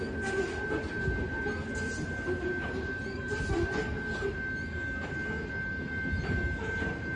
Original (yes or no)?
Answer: yes